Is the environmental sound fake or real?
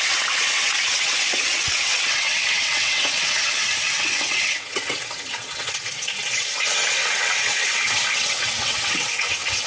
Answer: fake